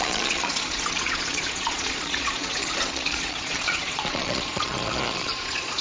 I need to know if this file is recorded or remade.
remade